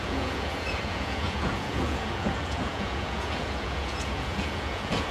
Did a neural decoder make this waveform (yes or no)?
yes